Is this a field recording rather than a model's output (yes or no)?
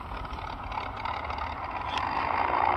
yes